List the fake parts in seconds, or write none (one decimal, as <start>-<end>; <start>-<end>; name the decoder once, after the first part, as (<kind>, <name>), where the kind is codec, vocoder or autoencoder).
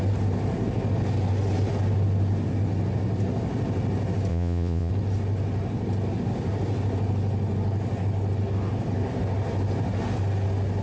4.3-4.9 (vocoder, Vocos)